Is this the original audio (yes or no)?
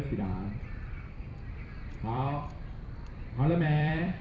no